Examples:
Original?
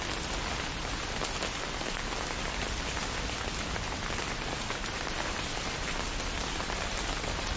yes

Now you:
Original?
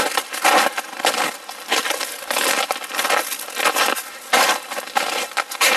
yes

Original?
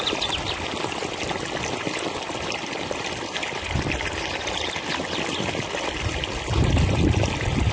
yes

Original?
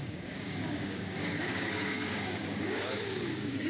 no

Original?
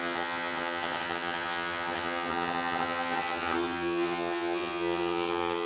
no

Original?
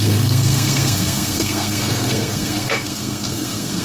no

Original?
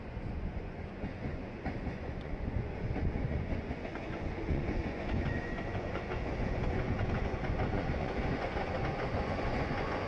no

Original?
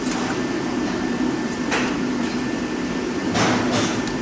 yes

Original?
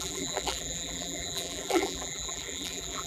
no